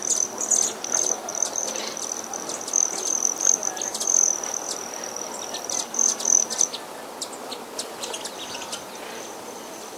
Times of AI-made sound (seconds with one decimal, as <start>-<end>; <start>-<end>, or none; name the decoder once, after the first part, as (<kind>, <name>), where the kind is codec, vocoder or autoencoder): none